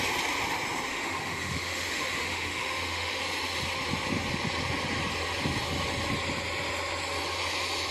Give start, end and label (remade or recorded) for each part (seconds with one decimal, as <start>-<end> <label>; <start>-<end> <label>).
0.0-0.9 recorded; 0.9-3.2 remade; 3.2-7.9 recorded